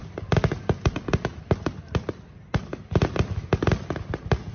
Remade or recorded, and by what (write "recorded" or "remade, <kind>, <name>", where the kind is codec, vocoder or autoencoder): recorded